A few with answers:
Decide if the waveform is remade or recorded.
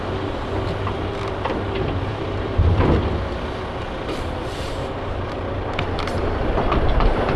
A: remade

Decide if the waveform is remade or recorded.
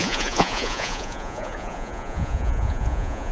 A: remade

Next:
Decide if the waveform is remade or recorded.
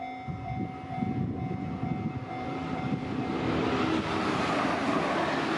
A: recorded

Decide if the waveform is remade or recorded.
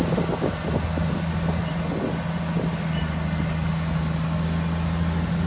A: recorded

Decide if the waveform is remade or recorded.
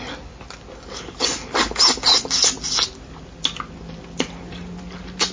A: recorded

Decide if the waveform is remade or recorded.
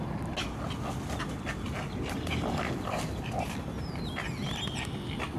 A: recorded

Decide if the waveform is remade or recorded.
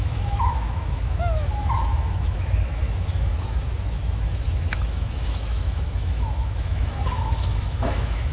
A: remade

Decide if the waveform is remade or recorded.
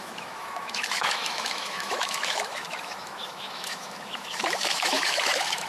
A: remade